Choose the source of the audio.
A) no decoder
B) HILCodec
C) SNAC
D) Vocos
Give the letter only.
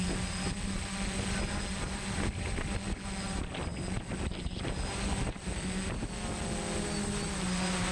A